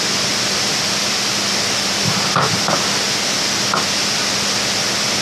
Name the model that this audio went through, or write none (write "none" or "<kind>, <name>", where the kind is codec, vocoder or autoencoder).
none